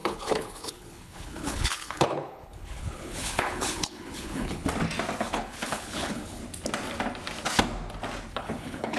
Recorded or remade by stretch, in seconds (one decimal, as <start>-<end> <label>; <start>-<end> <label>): 0.0-4.6 remade; 4.6-5.2 recorded; 5.2-6.4 remade; 6.4-8.3 recorded; 8.3-9.0 remade